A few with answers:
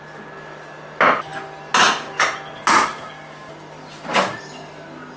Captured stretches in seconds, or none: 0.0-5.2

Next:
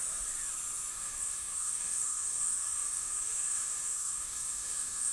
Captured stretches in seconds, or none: 0.0-0.9

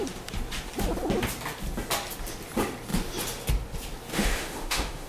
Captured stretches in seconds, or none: 0.0-4.1